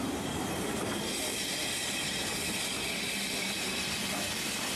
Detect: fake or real real